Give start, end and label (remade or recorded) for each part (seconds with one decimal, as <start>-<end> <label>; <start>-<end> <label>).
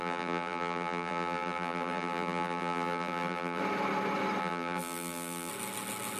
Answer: 0.0-3.6 remade; 3.6-4.4 recorded; 4.4-5.5 remade; 5.5-6.2 recorded